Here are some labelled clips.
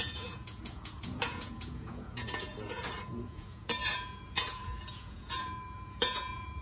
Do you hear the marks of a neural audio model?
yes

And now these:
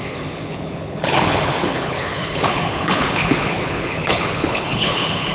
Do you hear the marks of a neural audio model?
yes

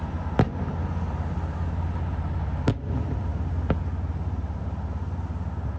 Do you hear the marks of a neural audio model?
no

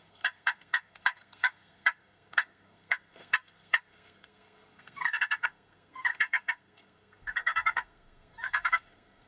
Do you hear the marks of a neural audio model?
yes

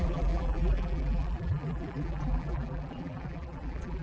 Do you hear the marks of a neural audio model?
yes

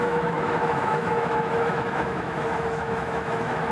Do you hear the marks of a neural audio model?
yes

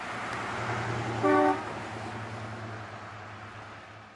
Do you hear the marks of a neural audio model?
no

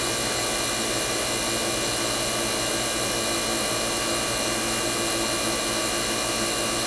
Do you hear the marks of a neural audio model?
no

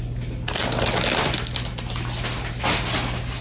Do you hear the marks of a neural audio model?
no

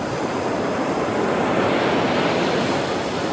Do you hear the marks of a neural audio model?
no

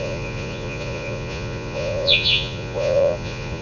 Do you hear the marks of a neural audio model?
yes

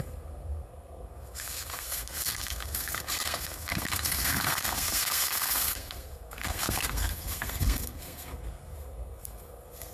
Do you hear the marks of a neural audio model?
yes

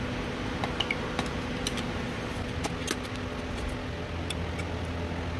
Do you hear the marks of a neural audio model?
no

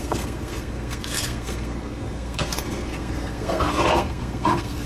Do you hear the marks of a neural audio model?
yes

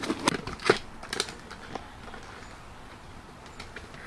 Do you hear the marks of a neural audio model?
no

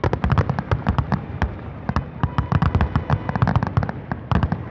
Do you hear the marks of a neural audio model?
no